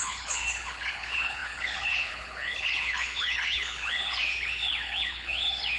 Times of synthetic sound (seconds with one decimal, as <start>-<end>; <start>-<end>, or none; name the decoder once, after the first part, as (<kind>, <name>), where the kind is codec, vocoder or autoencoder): 0.0-5.8 (codec, HILCodec)